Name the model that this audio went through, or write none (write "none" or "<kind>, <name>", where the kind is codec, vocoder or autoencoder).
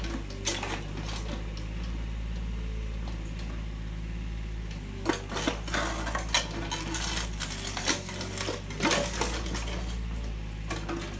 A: none